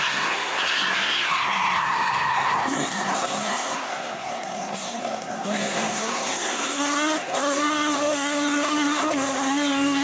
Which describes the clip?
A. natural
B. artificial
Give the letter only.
B